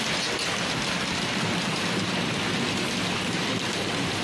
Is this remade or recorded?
recorded